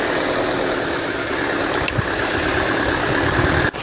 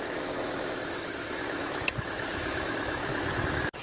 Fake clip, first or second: second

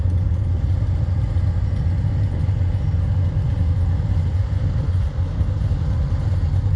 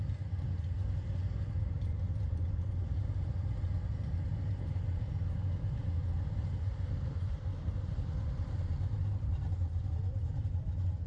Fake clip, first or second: second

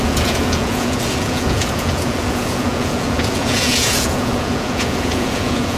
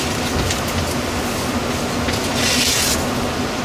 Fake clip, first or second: first